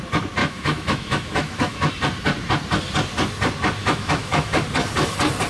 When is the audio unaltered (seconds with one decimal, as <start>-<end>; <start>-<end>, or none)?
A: 0.0-0.4; 1.9-3.8; 4.6-5.5